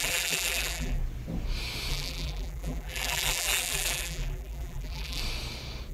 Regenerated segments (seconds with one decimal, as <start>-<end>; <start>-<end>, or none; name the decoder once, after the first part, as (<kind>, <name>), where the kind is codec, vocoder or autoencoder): 0.0-1.0 (vocoder, BigVGAN v2); 1.9-5.2